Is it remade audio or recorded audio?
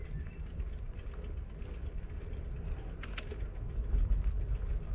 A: recorded